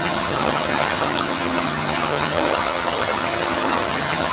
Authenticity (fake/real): fake